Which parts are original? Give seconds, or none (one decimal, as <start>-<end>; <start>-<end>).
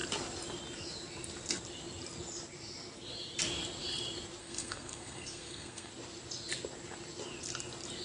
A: 0.0-4.4; 5.9-8.0